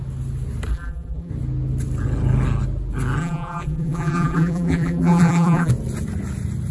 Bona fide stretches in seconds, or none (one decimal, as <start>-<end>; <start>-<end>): 0.0-0.7; 1.3-3.2; 5.7-6.7